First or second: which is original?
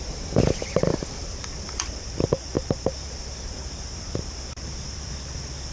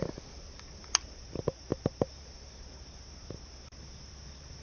second